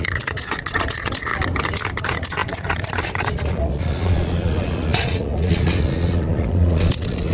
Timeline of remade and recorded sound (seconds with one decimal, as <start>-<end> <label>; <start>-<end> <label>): 0.0-1.3 remade; 1.3-2.0 recorded; 2.0-7.3 remade